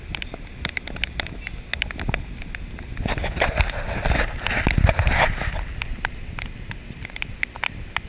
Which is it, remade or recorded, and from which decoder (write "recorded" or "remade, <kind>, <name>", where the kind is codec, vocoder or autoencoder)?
recorded